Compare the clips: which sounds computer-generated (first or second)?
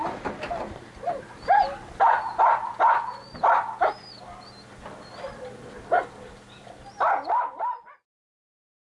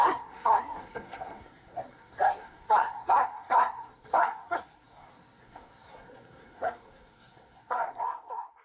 second